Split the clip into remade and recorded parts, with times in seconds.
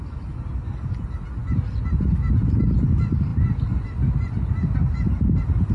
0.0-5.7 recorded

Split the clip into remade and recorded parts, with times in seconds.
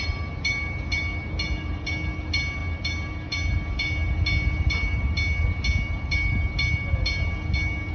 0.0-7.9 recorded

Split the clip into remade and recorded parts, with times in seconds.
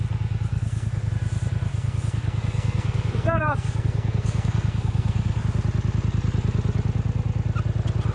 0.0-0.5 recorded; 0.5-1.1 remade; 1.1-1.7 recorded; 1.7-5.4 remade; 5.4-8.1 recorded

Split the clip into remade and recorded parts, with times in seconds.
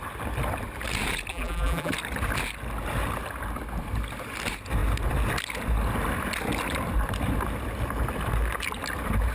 0.0-1.3 recorded; 1.3-1.9 remade; 1.9-9.3 recorded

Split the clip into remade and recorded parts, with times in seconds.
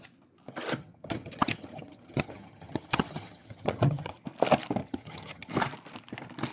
0.0-0.8 recorded; 0.8-4.2 remade; 4.2-4.8 recorded; 4.8-5.5 remade; 5.5-6.5 recorded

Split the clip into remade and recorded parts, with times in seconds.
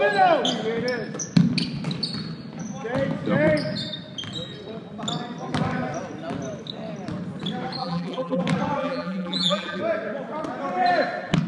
0.0-7.8 recorded; 7.8-8.4 remade; 8.4-8.8 recorded; 8.8-9.8 remade; 9.8-11.5 recorded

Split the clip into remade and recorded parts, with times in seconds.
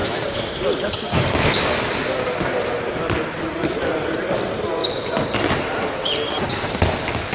0.0-4.8 recorded; 4.8-6.7 remade; 6.7-7.3 recorded